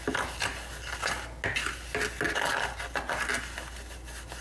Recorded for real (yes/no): yes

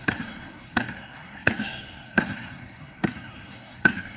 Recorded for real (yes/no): no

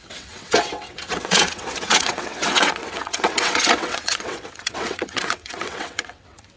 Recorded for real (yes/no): no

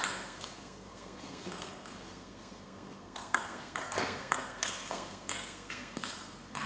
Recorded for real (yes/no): no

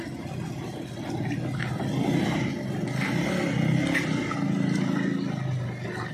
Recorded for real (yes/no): yes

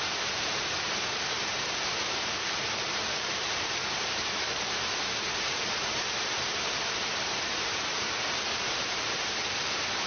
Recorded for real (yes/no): no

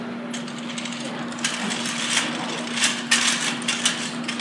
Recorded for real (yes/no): yes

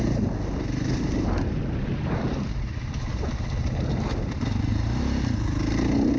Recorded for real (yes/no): yes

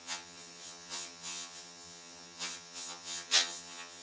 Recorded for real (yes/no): no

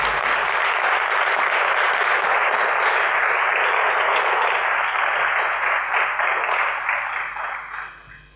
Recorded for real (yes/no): yes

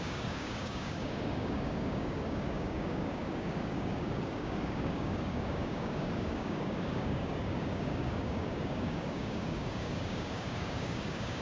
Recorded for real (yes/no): no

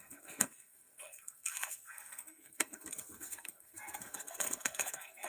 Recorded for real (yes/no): no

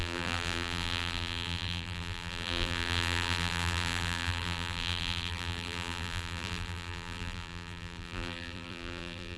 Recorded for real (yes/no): no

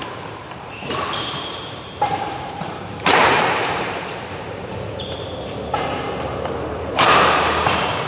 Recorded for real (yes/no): no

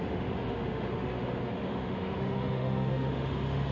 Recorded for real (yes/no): no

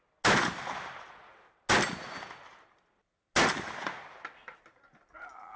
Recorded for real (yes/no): yes